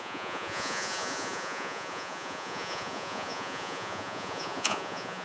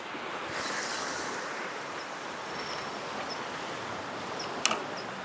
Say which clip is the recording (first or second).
second